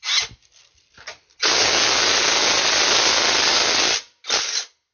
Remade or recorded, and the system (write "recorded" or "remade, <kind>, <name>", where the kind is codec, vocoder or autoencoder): recorded